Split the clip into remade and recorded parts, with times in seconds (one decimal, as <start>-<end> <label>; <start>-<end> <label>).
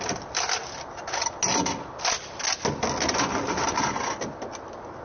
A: 0.0-5.0 recorded